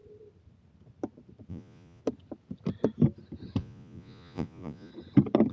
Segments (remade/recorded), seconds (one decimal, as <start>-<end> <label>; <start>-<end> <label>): 0.0-1.5 recorded; 1.5-2.0 remade; 2.0-3.6 recorded; 3.6-4.9 remade; 4.9-5.5 recorded